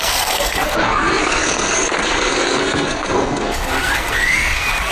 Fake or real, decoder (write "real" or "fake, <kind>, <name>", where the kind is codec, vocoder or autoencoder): fake, codec, SNAC